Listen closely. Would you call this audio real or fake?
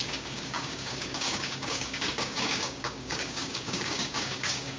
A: fake